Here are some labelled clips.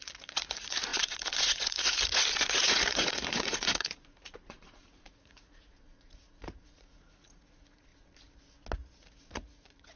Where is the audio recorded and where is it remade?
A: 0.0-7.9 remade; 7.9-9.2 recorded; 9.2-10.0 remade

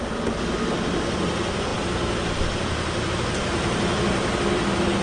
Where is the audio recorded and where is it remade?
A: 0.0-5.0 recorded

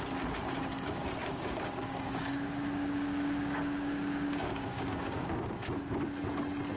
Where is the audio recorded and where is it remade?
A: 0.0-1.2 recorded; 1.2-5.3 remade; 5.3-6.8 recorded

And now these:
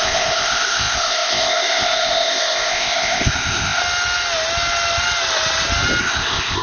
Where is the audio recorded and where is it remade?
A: 0.0-3.8 remade; 3.8-6.0 recorded; 6.0-6.6 remade